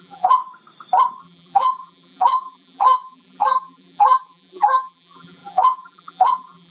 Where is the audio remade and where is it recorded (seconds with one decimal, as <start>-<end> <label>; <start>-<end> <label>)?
0.0-0.4 remade; 0.4-1.2 recorded; 1.2-6.7 remade